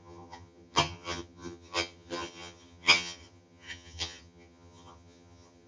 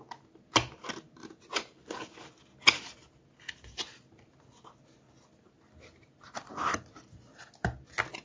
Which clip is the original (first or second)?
second